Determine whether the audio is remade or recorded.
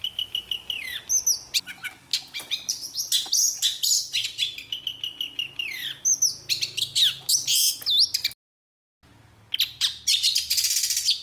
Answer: recorded